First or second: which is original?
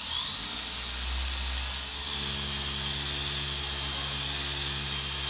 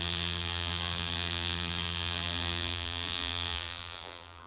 first